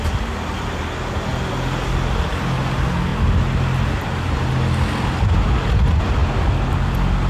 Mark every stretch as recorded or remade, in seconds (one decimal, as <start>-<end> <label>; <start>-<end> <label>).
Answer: 0.0-7.3 recorded